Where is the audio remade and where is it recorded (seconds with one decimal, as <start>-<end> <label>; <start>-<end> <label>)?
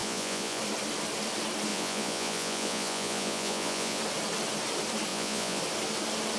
0.0-0.6 remade; 0.6-1.7 recorded; 1.7-4.0 remade; 4.0-5.1 recorded; 5.1-5.6 remade; 5.6-6.4 recorded